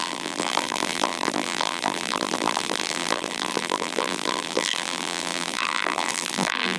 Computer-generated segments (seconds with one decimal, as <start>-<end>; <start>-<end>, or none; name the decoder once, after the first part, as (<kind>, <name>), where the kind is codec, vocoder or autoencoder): 0.0-6.8 (vocoder, BigVGAN v2)